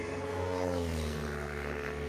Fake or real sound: fake